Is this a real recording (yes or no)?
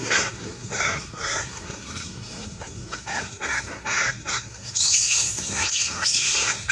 no